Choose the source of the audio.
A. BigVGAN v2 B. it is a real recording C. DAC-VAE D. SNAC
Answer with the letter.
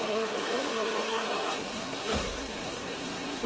D